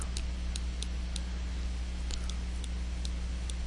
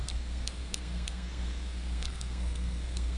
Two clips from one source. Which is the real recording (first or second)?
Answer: first